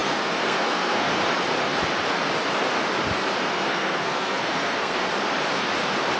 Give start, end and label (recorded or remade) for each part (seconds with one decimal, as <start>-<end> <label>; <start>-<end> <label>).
0.0-1.1 remade; 1.1-3.4 recorded; 3.4-5.1 remade; 5.1-6.2 recorded